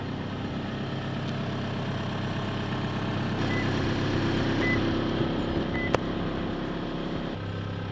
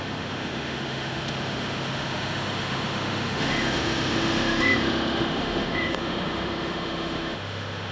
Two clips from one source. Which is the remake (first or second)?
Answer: second